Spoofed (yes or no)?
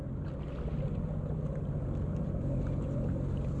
no